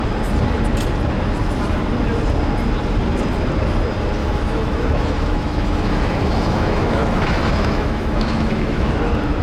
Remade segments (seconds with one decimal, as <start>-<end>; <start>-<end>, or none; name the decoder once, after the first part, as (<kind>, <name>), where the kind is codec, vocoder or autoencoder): 4.2-8.9 (autoencoder, DAC-VAE)